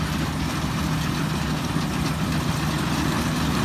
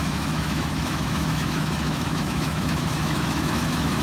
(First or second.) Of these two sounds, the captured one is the first